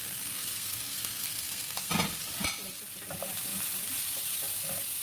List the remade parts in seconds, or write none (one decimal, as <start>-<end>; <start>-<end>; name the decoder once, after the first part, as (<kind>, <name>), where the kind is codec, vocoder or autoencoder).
0.0-1.9 (codec, SNAC)

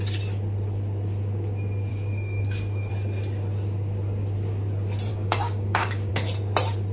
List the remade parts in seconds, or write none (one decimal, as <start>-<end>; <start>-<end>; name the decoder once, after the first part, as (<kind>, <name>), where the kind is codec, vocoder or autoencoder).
1.9-2.9 (codec, DAC); 5.1-6.1

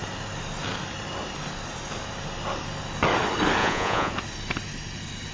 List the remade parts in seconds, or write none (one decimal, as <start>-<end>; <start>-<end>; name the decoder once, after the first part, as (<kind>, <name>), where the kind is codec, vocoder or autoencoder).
3.6-4.1 (vocoder, Vocos)